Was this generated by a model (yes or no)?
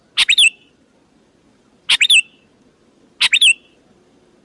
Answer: no